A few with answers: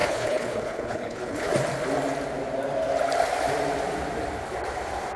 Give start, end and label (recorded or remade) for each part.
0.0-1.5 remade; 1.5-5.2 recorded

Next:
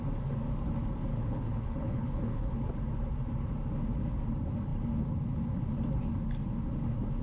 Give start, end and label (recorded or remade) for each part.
0.0-1.1 recorded; 1.1-2.6 remade; 2.6-7.2 recorded